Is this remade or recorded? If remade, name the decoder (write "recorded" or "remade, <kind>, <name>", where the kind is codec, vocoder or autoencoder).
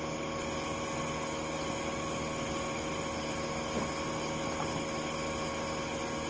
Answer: recorded